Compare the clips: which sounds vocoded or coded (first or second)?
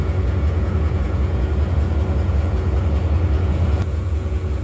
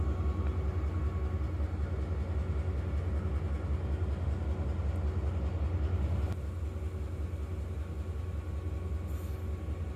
first